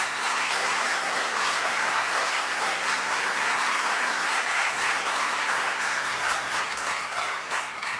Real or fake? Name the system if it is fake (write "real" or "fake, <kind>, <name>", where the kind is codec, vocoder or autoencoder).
fake, codec, SNAC